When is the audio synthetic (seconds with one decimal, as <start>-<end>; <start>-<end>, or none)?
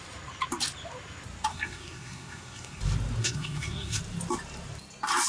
1.5-2.8; 3.2-4.0